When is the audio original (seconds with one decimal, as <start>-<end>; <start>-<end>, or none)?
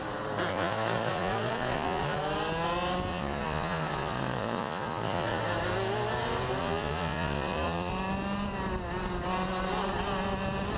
0.0-0.5; 2.2-3.1; 5.4-6.6; 7.9-10.8